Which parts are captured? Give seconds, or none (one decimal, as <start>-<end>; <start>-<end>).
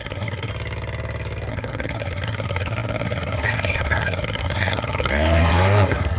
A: 0.5-1.5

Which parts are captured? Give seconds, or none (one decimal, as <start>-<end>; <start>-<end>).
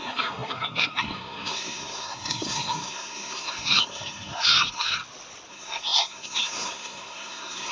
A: 5.0-5.5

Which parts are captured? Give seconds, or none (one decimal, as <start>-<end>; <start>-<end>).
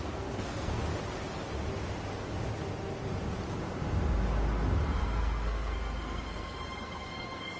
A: 0.8-5.0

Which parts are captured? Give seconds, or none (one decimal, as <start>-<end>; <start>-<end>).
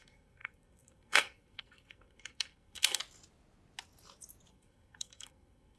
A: 3.0-4.5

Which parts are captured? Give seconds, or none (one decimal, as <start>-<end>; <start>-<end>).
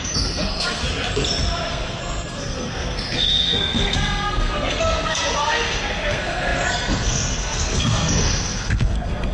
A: 0.8-1.7